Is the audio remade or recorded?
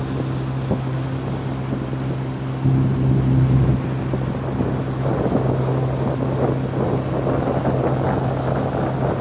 recorded